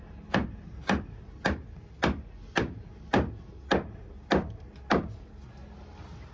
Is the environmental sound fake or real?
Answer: real